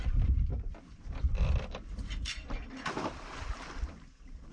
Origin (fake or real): fake